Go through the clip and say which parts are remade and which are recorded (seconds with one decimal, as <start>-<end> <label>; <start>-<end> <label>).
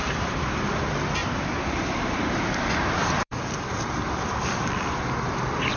0.0-0.5 remade; 0.5-1.2 recorded; 1.2-4.7 remade; 4.7-5.8 recorded